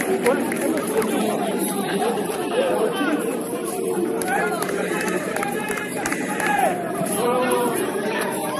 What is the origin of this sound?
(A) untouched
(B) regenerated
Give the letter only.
B